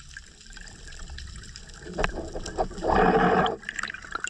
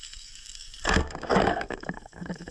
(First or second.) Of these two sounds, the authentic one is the first